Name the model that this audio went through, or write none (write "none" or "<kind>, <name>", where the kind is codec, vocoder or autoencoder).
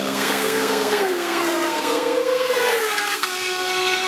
codec, SNAC